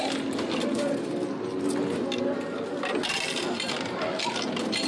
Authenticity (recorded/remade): recorded